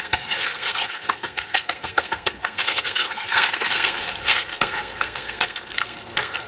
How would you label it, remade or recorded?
remade